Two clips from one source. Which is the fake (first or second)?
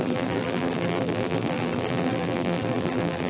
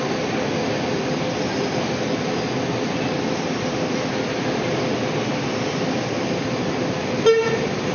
first